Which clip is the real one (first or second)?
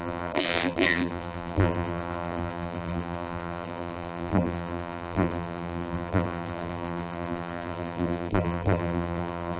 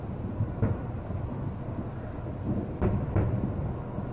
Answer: second